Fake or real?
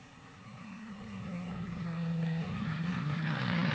fake